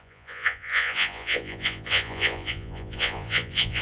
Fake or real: fake